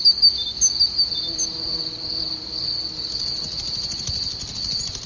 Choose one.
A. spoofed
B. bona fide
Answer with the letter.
B